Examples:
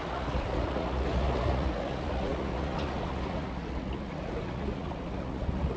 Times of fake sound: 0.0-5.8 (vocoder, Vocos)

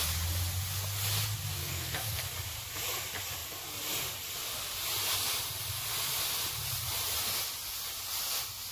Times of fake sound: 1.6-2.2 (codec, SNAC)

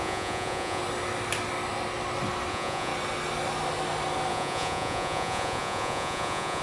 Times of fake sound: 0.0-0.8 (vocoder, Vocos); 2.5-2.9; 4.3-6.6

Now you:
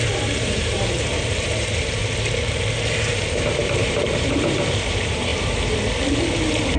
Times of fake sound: 0.0-2.0 (vocoder, BigVGAN v2); 3.1-5.3

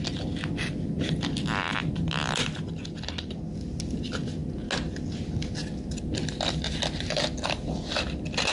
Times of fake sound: none

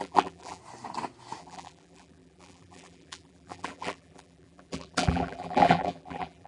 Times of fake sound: 0.0-0.6 (vocoder, BigVGAN v2); 1.4-6.5